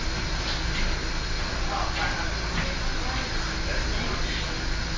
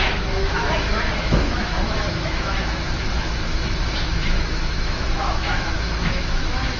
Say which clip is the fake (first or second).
second